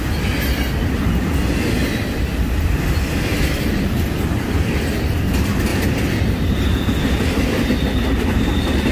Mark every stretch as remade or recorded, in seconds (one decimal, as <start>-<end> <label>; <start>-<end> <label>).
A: 0.0-2.3 recorded; 2.3-5.2 remade; 5.2-5.7 recorded; 5.7-6.8 remade; 6.8-8.9 recorded

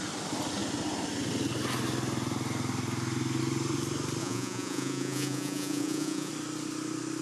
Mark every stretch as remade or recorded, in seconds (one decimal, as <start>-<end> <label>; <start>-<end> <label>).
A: 0.0-4.2 recorded; 4.2-6.3 remade; 6.3-7.2 recorded

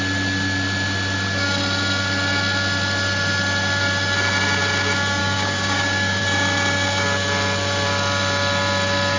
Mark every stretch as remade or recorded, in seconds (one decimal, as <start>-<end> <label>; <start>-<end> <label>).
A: 0.0-5.2 recorded; 5.2-6.2 remade; 6.2-9.2 recorded

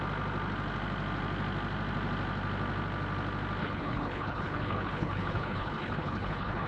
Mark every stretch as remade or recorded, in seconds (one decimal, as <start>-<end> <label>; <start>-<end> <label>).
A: 0.0-3.6 recorded; 3.6-6.7 remade

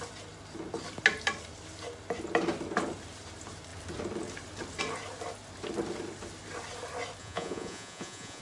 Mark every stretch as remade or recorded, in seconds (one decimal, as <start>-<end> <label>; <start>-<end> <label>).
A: 0.0-7.2 recorded; 7.2-8.4 remade

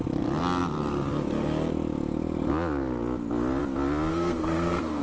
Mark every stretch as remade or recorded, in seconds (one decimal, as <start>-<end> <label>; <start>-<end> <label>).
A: 0.0-4.1 recorded; 4.1-5.0 remade

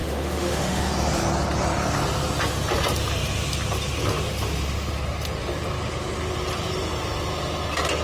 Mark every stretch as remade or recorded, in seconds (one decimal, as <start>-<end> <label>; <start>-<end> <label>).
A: 0.0-0.9 remade; 0.9-8.0 recorded